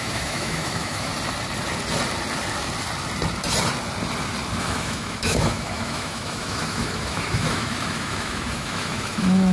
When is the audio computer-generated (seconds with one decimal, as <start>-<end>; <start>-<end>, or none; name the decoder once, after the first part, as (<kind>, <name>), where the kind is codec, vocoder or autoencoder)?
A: 0.0-1.1 (autoencoder, DAC-VAE); 4.6-9.5